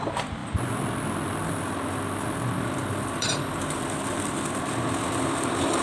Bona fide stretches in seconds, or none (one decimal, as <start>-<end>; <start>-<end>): 0.0-5.8